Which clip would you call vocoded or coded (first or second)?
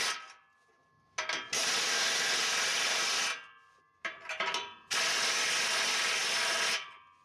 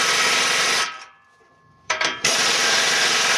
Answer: second